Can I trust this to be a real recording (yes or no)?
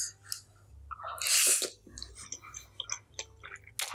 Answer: yes